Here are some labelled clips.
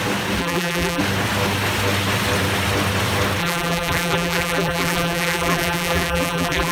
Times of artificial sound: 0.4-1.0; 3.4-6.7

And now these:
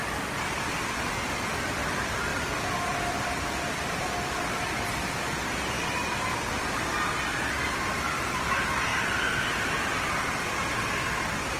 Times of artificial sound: none

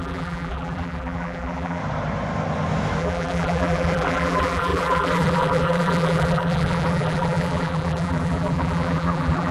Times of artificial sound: 0.0-1.8; 3.0-9.5

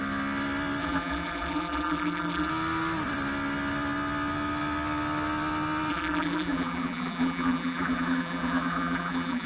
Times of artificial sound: 0.8-2.5; 5.9-9.5

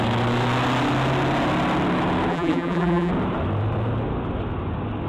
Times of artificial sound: 2.3-3.1

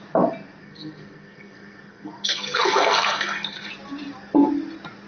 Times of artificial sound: 0.6-3.7

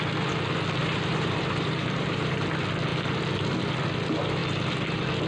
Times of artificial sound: 0.8-2.4